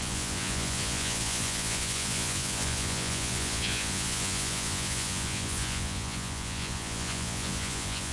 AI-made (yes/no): yes